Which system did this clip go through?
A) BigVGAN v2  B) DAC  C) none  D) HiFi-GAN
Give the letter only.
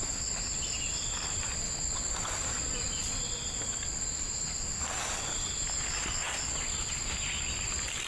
C